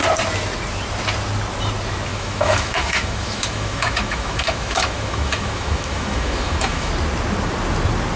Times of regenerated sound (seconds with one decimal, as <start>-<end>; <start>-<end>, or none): 2.1-6.9